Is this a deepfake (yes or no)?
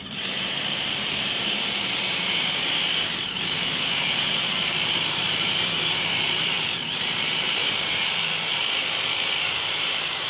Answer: yes